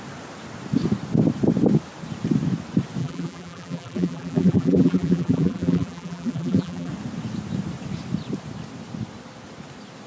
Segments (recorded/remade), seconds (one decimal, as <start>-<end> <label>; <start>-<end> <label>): 0.0-3.0 recorded; 3.0-6.9 remade; 6.9-10.1 recorded